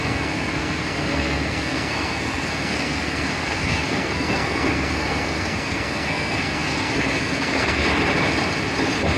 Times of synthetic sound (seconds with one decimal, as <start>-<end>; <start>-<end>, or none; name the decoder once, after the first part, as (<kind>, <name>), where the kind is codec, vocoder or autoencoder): 0.0-7.8 (codec, SNAC)